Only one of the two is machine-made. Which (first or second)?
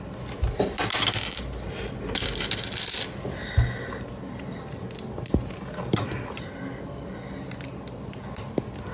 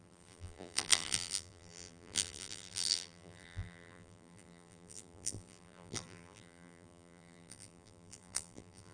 second